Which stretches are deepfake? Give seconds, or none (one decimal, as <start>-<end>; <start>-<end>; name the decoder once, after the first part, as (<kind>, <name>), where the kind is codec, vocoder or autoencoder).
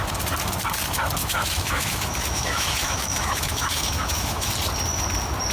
1.2-4.5 (autoencoder, DAC-VAE)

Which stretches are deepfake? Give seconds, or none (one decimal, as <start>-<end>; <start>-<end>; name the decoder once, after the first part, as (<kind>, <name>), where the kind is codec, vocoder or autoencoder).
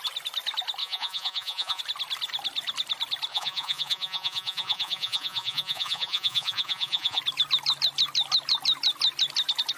0.8-1.8 (vocoder, Vocos); 3.3-7.2